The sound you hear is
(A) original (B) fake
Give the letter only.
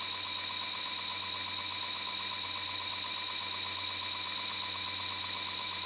A